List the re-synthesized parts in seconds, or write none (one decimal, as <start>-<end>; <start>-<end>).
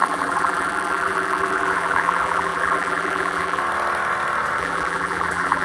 0.0-3.6; 4.6-5.6